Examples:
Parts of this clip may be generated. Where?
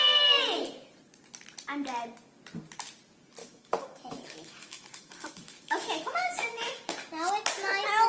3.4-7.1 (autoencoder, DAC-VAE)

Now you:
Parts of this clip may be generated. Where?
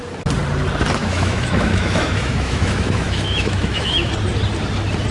1.0-4.1 (autoencoder, DAC-VAE)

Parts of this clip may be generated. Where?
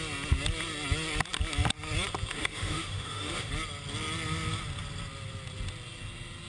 2.3-3.5 (autoencoder, DAC-VAE)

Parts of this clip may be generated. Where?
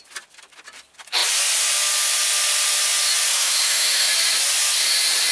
3.3-4.1 (autoencoder, DAC-VAE)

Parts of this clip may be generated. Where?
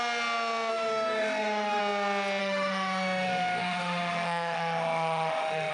0.7-1.8 (autoencoder, DAC-VAE); 2.4-5.7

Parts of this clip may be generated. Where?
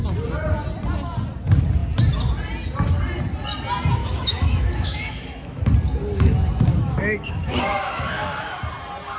4.0-5.6 (autoencoder, DAC-VAE); 6.7-8.6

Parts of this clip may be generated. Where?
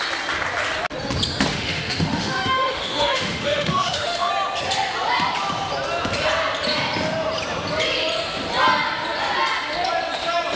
1.5-4.3 (autoencoder, DAC-VAE)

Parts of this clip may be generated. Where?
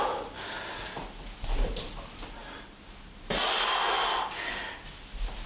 none